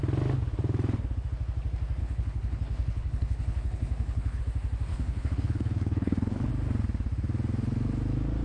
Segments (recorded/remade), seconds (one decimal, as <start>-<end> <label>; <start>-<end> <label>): 0.0-2.0 recorded; 2.0-4.4 remade; 4.4-4.9 recorded; 4.9-6.5 remade; 6.5-8.4 recorded